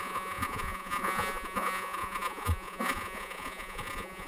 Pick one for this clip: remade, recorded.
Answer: remade